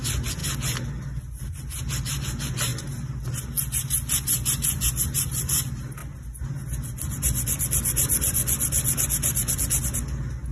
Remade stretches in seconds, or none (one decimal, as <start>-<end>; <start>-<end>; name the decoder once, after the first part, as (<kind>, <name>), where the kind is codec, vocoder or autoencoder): none